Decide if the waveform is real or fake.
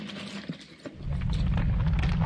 real